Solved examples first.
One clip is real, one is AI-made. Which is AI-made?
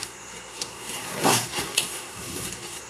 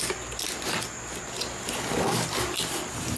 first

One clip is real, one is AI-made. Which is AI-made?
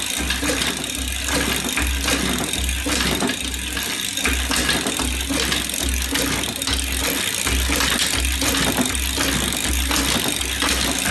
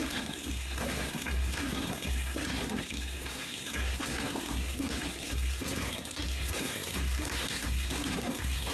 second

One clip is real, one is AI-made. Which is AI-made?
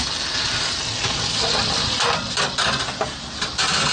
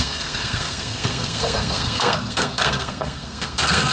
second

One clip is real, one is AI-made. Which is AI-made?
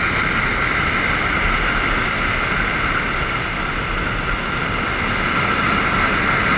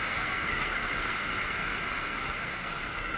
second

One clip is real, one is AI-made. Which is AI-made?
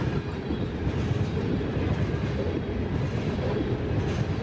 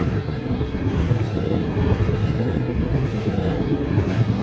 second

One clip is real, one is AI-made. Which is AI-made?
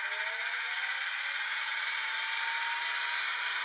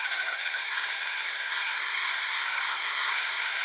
second